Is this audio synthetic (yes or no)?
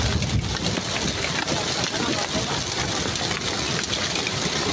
no